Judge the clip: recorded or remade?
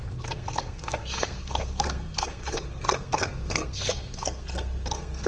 remade